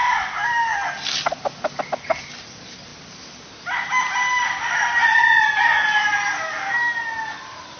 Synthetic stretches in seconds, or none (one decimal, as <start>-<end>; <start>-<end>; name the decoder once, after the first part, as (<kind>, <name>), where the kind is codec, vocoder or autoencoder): none

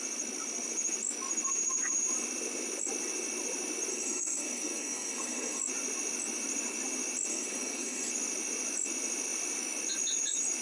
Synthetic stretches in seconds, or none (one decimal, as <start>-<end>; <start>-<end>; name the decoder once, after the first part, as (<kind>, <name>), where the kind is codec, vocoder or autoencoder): 3.9-5.6 (codec, SNAC); 7.3-8.1

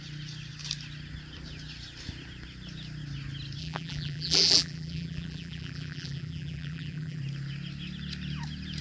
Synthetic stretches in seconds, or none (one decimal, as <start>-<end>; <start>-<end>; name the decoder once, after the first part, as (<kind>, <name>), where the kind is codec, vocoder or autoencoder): 3.6-7.2 (vocoder, BigVGAN v2)